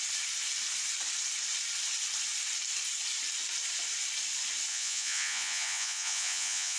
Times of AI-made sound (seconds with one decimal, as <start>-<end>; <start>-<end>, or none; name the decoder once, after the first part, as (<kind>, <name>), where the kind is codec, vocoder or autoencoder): 4.7-6.8 (vocoder, Vocos)